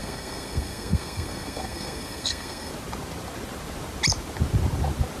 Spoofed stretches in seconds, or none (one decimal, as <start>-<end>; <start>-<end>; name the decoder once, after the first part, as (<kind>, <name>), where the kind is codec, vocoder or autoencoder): 0.0-2.7 (codec, SNAC)